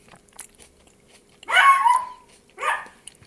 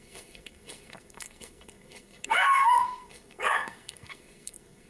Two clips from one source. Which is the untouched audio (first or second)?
first